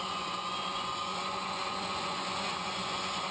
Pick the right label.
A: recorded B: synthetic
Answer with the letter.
B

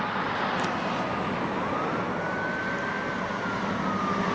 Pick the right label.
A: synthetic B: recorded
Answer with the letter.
B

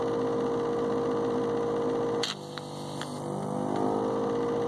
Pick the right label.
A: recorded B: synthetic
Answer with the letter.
A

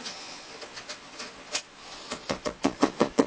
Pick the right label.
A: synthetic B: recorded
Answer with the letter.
A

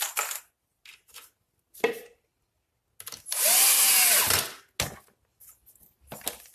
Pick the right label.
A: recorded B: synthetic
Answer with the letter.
A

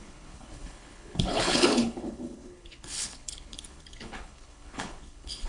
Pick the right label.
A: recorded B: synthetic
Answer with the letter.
B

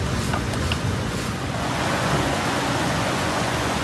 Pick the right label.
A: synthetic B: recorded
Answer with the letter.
A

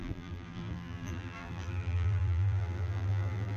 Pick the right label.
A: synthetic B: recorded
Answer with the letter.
A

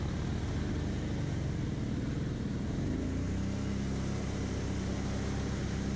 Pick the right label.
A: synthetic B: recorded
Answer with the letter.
B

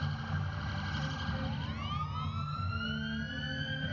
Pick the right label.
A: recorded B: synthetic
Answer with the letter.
A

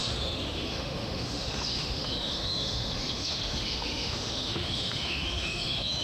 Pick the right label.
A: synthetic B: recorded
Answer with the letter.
A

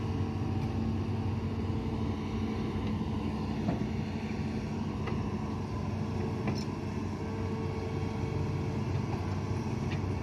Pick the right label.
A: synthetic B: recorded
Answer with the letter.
B